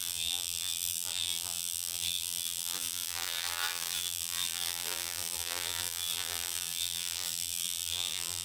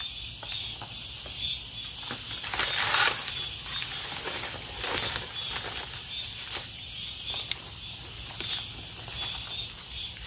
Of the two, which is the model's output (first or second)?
first